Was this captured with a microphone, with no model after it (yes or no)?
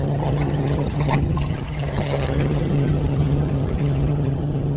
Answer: no